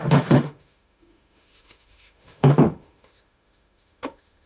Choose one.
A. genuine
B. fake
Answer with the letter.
B